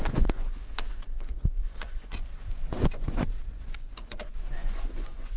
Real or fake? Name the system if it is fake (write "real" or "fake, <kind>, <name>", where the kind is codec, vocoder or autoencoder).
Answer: fake, vocoder, Vocos